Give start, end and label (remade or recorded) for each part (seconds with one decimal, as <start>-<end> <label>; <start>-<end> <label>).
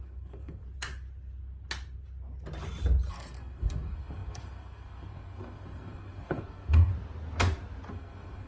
0.0-0.6 remade; 0.6-3.1 recorded; 3.1-6.9 remade; 6.9-7.9 recorded; 7.9-8.5 remade